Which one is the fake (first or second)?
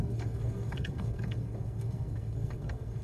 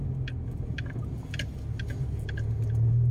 first